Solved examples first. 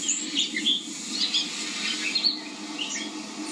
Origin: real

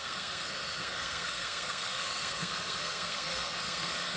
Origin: fake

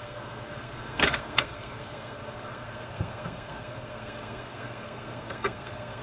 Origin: fake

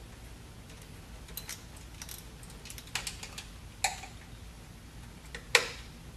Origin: real